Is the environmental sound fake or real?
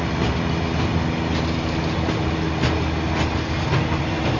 real